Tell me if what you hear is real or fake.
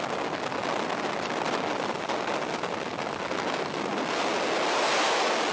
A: real